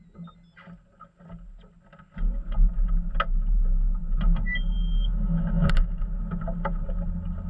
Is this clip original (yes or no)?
yes